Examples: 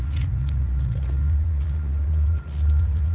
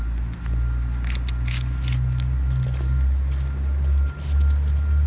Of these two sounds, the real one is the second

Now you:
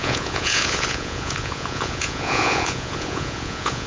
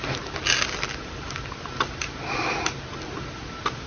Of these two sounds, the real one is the second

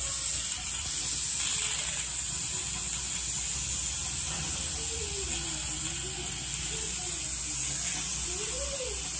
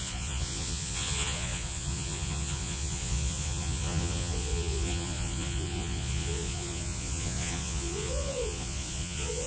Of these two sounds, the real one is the first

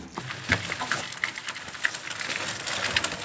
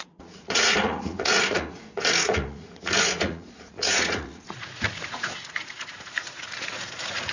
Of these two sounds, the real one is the first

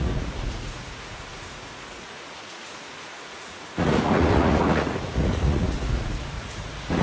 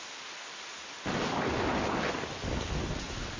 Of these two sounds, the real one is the second